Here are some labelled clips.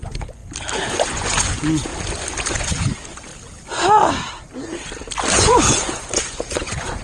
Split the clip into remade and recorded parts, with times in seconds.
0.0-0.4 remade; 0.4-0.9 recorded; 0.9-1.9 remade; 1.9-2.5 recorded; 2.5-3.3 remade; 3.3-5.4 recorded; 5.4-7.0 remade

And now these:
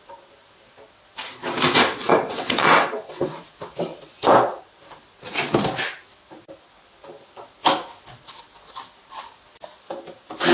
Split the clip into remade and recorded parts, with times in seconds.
0.0-1.8 recorded; 1.8-3.3 remade; 3.3-10.5 recorded

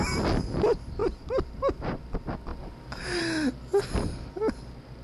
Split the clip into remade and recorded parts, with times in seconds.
0.0-1.0 recorded; 1.0-2.0 remade; 2.0-2.5 recorded; 2.5-3.2 remade; 3.2-5.0 recorded

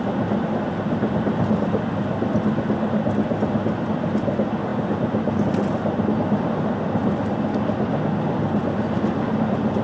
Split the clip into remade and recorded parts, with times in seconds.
0.0-9.8 recorded

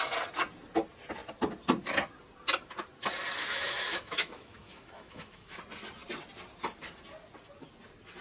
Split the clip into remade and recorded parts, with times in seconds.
0.0-3.4 recorded; 3.4-5.6 remade; 5.6-8.2 recorded

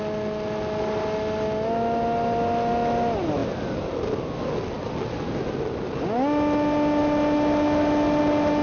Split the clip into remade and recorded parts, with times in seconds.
0.0-8.6 recorded

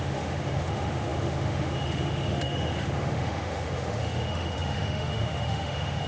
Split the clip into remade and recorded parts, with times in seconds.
0.0-6.1 remade

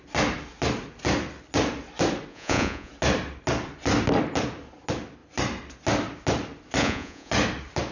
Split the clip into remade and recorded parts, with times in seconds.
0.0-2.3 recorded; 2.3-2.9 remade; 2.9-6.8 recorded; 6.8-7.3 remade; 7.3-7.9 recorded